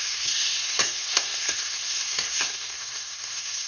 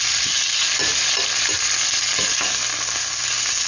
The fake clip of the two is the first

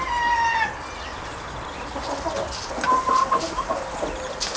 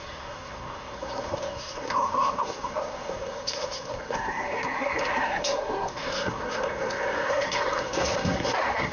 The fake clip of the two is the second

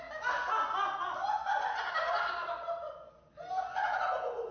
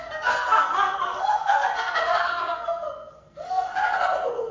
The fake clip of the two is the second